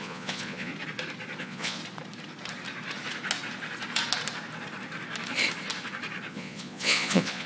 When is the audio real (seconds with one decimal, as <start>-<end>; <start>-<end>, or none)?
0.7-1.4; 1.8-6.3